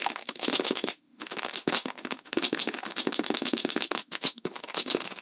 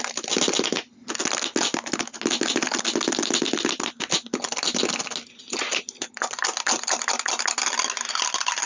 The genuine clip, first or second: second